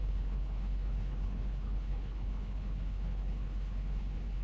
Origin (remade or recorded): remade